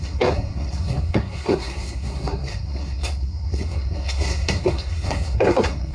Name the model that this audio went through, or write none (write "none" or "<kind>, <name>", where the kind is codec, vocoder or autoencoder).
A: codec, SNAC